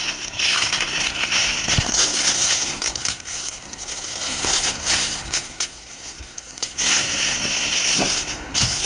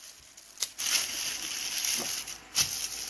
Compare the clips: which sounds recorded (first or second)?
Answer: second